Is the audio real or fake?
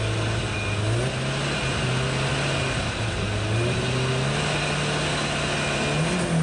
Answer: real